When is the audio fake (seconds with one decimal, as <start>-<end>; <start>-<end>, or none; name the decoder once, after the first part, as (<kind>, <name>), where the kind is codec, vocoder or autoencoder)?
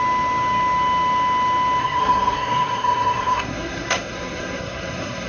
1.8-5.3 (codec, SNAC)